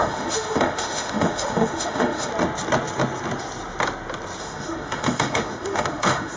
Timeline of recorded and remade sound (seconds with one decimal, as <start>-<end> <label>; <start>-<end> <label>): 0.0-2.3 remade; 2.3-4.4 recorded; 4.4-6.4 remade